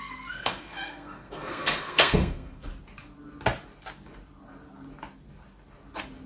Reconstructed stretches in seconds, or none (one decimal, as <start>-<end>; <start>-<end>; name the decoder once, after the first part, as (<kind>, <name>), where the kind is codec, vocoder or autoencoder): 0.0-2.7 (codec, SNAC)